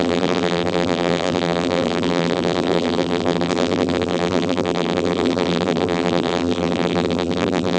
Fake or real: fake